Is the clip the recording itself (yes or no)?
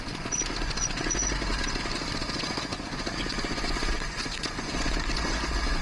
no